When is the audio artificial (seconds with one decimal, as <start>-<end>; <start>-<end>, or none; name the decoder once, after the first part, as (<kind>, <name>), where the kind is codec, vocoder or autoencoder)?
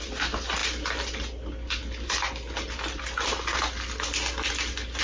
none